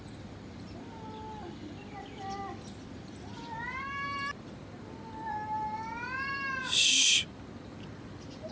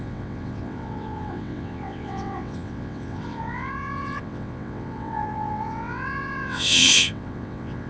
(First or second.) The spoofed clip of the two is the second